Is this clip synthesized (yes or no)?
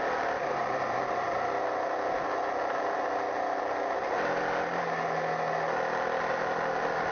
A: no